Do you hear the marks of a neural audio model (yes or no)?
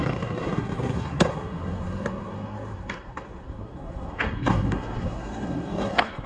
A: yes